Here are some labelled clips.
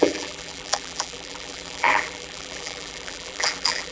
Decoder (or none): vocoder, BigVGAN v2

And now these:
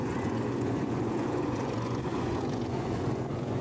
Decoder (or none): vocoder, Vocos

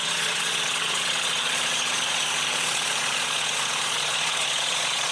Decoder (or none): vocoder, Vocos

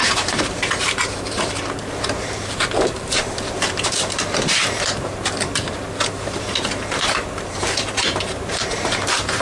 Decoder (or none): vocoder, BigVGAN v2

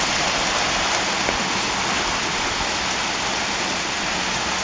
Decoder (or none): none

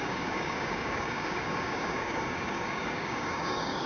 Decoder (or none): codec, DAC